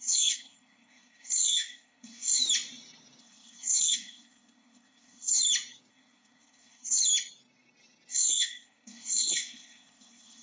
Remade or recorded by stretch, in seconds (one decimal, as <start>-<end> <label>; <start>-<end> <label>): 0.0-2.4 remade; 2.4-3.2 recorded; 3.2-5.3 remade; 5.3-5.9 recorded; 5.9-7.0 remade; 7.0-8.1 recorded; 8.1-10.4 remade